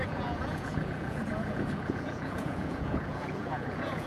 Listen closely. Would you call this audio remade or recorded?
remade